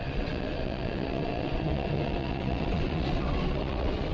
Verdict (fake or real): fake